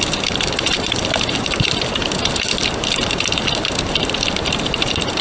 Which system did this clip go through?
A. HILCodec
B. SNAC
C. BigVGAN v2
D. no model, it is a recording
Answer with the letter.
C